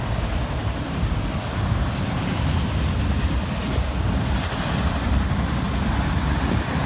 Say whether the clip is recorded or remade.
recorded